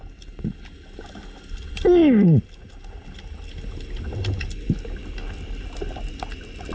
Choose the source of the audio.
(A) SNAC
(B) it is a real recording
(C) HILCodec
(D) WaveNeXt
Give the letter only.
B